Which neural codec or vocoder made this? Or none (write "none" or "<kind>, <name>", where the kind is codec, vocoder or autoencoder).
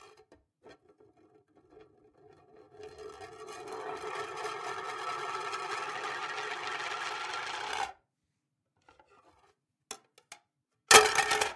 none